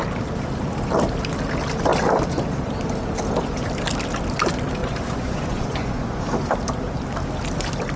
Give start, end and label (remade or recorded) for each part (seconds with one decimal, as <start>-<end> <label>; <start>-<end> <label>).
0.0-4.8 recorded; 4.8-6.2 remade; 6.2-8.0 recorded